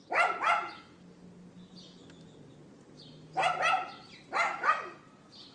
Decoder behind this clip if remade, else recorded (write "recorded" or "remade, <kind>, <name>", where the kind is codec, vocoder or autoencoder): recorded